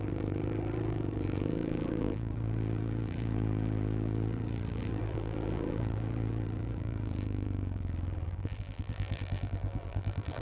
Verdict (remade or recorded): remade